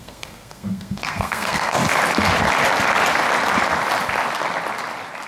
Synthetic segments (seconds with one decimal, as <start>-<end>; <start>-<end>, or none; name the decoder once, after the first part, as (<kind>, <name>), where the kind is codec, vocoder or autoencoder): 0.0-1.8 (codec, SNAC)